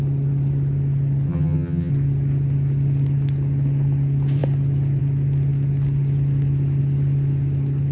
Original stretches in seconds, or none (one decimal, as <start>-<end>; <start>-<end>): 0.0-1.3; 1.9-7.9